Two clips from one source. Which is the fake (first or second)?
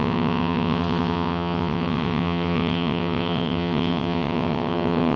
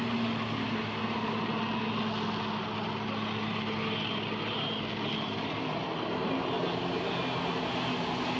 first